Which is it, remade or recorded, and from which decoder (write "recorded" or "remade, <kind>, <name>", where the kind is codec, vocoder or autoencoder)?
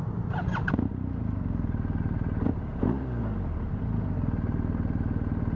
recorded